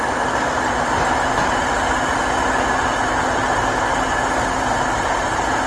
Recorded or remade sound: recorded